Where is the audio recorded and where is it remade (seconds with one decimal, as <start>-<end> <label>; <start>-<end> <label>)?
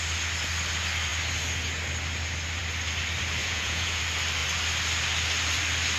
0.0-3.4 recorded; 3.4-4.0 remade; 4.0-6.0 recorded